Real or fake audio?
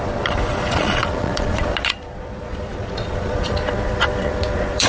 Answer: fake